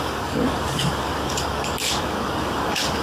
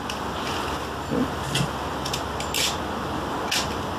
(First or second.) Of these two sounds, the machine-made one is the first